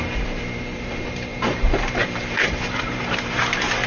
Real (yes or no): no